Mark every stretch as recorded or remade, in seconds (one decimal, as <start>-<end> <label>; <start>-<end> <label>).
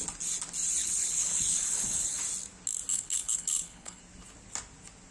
0.0-0.8 recorded; 0.8-2.2 remade; 2.2-2.9 recorded; 2.9-4.0 remade; 4.0-5.1 recorded